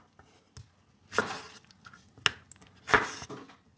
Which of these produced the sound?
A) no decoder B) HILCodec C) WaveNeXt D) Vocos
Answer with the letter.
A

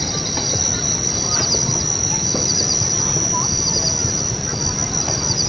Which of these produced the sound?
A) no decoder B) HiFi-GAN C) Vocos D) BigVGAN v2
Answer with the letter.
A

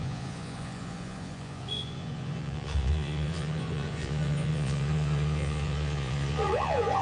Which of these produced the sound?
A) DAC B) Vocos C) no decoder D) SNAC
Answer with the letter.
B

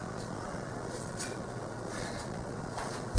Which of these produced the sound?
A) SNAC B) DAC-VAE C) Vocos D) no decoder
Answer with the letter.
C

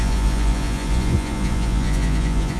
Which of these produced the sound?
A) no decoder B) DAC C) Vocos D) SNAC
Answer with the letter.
C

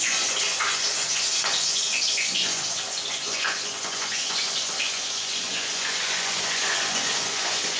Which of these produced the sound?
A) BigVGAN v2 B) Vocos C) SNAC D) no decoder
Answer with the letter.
B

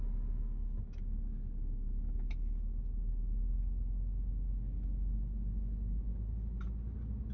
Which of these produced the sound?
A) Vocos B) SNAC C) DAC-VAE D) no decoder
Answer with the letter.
D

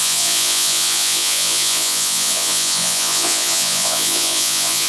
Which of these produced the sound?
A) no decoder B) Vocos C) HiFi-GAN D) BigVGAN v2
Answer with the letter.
B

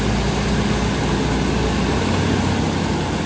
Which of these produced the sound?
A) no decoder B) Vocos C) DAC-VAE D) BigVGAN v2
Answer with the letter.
A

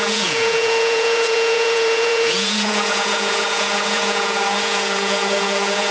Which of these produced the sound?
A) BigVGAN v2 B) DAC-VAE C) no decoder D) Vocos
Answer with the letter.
D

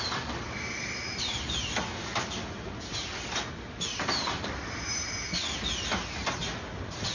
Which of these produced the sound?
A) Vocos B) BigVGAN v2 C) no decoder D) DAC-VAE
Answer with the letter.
C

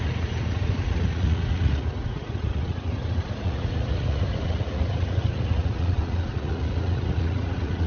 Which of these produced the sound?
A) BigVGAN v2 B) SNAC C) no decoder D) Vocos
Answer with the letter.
D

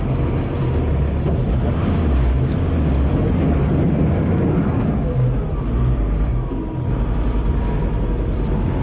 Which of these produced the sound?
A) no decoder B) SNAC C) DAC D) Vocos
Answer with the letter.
A